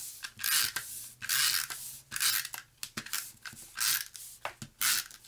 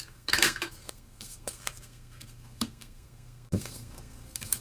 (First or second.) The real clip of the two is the first